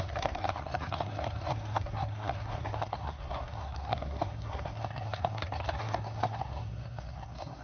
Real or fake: fake